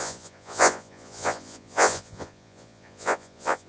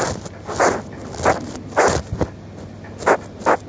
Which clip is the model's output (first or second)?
first